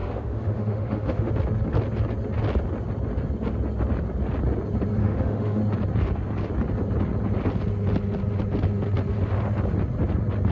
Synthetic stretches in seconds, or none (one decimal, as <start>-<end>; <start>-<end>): 0.0-1.3; 5.0-5.6